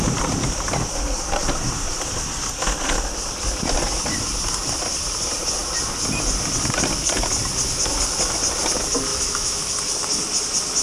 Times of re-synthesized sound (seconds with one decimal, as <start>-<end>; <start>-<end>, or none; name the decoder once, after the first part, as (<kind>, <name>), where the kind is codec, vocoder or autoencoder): 9.1-9.7 (autoencoder, DAC-VAE)